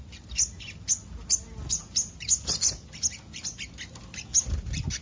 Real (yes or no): yes